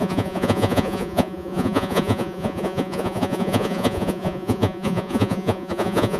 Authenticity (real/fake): fake